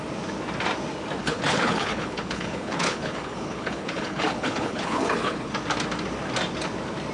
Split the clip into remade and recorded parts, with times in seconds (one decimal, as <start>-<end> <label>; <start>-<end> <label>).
0.0-1.2 recorded; 1.2-5.5 remade; 5.5-7.1 recorded